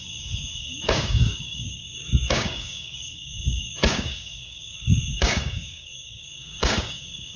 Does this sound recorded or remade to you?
remade